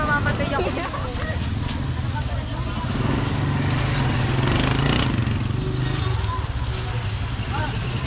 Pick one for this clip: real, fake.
real